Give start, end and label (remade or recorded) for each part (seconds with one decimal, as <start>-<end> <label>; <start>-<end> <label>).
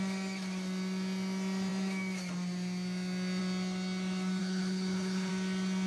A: 0.0-4.4 recorded; 4.4-5.3 remade; 5.3-5.9 recorded